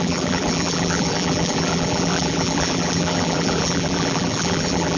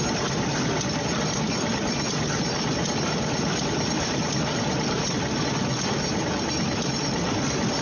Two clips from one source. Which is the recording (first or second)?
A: second